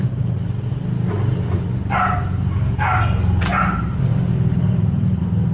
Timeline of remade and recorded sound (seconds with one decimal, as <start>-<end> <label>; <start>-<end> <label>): 0.0-5.5 recorded

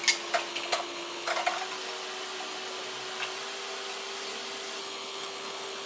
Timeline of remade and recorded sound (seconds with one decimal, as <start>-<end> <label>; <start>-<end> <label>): 0.0-0.5 recorded; 0.5-1.3 remade; 1.3-4.8 recorded; 4.8-5.9 remade